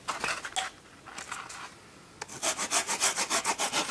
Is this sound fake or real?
real